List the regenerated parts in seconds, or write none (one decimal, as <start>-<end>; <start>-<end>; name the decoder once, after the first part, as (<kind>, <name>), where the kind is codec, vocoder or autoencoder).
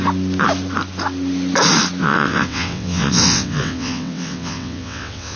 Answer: 2.0-5.4 (vocoder, WaveNeXt)